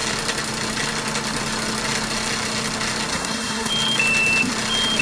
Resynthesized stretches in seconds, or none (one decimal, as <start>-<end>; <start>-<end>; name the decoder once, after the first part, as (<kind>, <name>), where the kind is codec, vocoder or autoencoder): 3.1-3.7 (codec, SNAC)